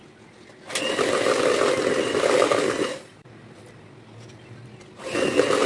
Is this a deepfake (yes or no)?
no